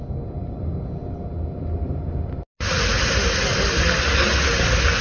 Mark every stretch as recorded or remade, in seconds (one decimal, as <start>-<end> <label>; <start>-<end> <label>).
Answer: 0.0-5.0 recorded